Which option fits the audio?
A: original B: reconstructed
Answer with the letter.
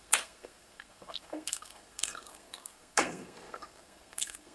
B